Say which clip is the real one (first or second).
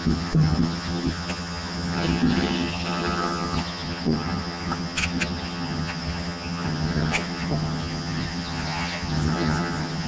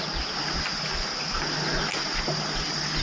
second